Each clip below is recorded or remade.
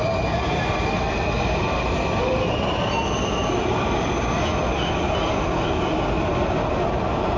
recorded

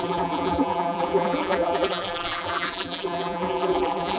remade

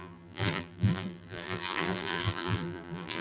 remade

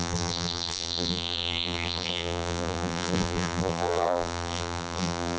remade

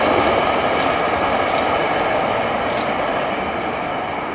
remade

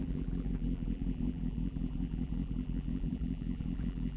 remade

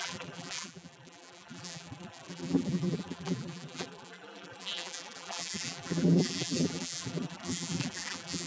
remade